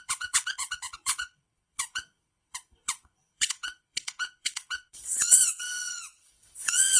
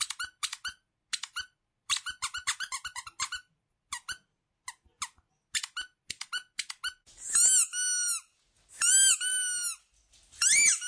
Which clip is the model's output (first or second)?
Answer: first